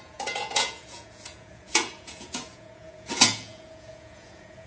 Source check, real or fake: fake